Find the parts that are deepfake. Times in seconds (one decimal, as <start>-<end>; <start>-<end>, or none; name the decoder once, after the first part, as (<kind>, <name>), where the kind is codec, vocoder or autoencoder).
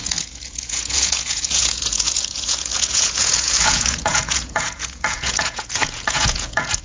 0.0-6.8 (vocoder, Vocos)